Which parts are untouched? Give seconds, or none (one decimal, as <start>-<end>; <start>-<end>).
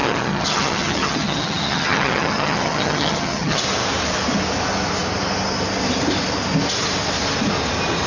3.6-8.1